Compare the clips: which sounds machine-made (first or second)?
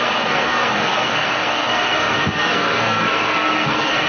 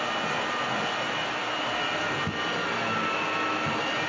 first